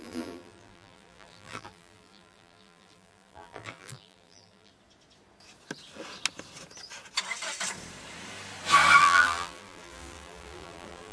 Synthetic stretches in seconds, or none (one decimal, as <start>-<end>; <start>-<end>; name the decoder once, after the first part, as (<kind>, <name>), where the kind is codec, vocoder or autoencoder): 0.0-4.7 (vocoder, BigVGAN v2); 9.0-11.1